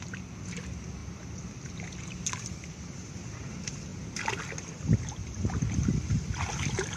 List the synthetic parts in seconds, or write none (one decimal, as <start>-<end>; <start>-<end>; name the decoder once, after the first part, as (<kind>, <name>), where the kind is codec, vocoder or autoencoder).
none